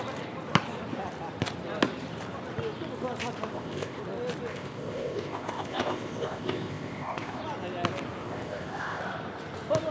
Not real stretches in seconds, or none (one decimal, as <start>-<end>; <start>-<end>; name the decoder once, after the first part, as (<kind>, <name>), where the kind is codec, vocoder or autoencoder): 3.5-4.0 (codec, ZipCodec); 4.5-7.4; 8.2-9.0